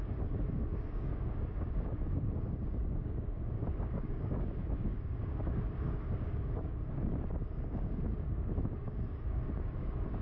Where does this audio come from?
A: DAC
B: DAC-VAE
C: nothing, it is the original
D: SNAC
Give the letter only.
A